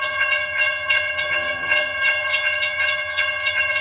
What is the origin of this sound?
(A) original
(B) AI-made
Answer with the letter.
B